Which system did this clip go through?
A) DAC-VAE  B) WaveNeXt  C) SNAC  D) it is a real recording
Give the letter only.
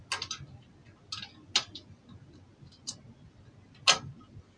D